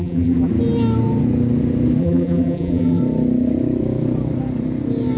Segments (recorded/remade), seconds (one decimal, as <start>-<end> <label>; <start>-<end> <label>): 0.0-0.5 remade; 0.5-2.0 recorded; 2.0-3.0 remade; 3.0-5.2 recorded